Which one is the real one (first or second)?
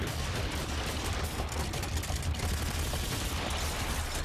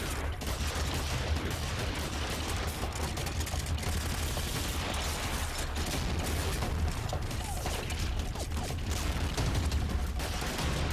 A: second